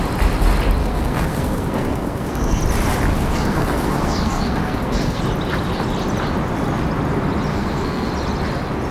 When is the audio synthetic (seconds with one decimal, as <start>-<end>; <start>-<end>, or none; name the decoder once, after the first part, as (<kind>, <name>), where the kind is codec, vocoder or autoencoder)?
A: 0.8-2.6 (codec, SNAC); 3.1-5.2; 7.5-8.1